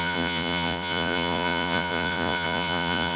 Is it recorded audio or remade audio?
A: remade